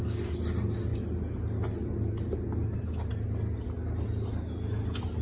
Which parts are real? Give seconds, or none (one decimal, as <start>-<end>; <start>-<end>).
0.0-5.2